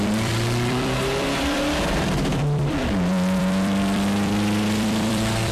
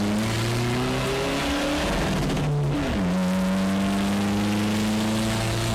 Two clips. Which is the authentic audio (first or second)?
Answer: second